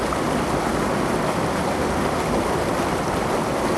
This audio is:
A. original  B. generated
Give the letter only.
A